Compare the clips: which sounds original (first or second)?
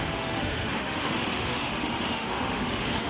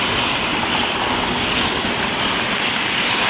second